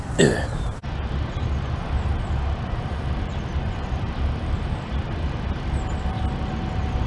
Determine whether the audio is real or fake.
fake